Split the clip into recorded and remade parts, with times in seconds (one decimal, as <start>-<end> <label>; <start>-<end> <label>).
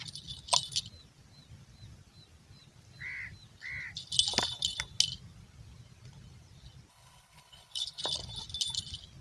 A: 0.0-6.9 recorded; 6.9-8.0 remade; 8.0-9.2 recorded